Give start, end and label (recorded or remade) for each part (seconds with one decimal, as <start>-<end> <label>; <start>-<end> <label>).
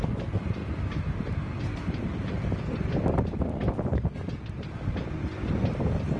0.0-6.2 recorded